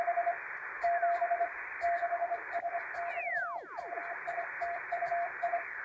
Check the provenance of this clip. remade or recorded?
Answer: recorded